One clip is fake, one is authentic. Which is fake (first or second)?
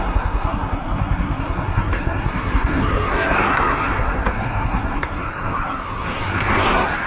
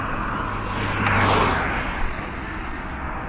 first